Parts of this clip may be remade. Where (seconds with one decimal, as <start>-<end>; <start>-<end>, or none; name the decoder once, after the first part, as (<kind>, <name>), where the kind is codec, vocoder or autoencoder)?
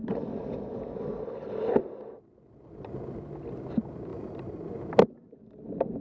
4.1-4.6 (vocoder, BigVGAN v2)